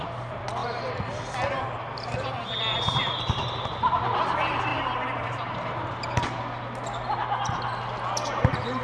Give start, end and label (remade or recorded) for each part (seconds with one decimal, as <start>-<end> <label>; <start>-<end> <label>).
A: 0.0-8.8 recorded